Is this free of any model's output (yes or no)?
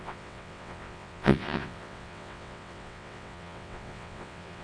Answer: no